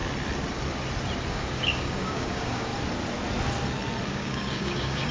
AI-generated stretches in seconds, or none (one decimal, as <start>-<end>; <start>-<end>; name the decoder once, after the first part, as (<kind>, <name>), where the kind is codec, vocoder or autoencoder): 1.3-2.7 (codec, DAC); 4.1-5.1